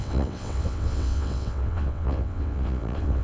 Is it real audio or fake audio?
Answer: fake